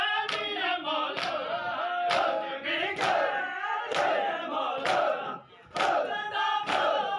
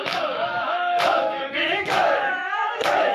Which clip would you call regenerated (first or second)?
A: second